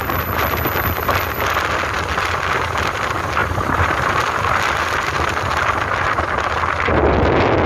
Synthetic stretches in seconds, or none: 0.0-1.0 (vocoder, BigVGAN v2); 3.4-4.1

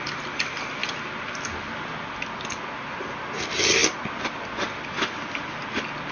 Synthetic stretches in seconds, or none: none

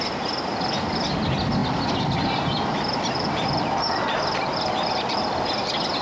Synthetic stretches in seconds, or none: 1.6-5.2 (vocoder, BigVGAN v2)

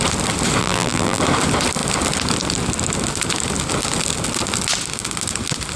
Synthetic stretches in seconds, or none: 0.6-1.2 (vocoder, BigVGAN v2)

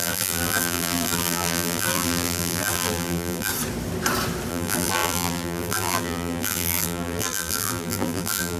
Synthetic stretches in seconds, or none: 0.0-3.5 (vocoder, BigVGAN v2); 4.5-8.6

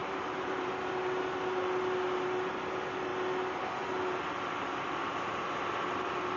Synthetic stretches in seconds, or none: 0.0-0.7 (vocoder, BigVGAN v2); 5.0-5.7